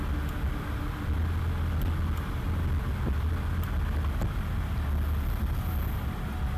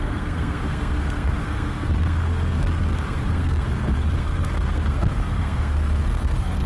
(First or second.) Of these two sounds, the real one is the first